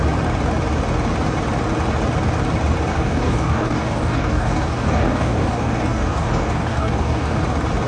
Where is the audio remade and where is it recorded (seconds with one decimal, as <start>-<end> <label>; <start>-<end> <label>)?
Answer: 0.0-2.9 recorded; 2.9-7.4 remade; 7.4-7.9 recorded